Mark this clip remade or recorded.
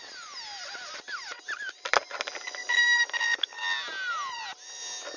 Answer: recorded